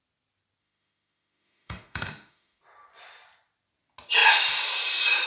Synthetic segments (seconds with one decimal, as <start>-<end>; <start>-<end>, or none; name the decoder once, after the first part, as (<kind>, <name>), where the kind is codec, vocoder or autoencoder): 0.6-2.6 (autoencoder, DAC-VAE)